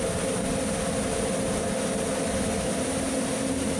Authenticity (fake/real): real